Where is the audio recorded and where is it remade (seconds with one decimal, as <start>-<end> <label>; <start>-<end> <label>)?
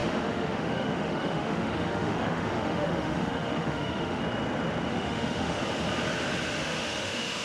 0.0-4.2 remade; 4.2-4.9 recorded; 4.9-5.6 remade; 5.6-6.6 recorded; 6.6-7.4 remade